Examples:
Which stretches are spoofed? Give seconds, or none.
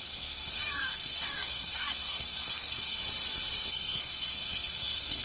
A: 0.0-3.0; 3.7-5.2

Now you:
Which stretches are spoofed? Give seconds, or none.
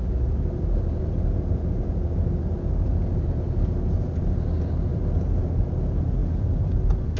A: none